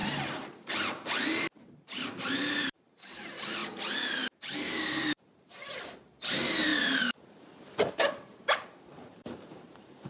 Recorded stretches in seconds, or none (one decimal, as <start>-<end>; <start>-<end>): 0.0-2.4; 3.6-4.4